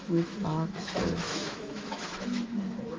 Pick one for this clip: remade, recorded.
remade